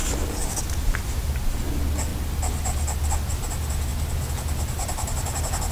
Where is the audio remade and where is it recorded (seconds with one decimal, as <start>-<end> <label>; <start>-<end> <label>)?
0.0-5.7 recorded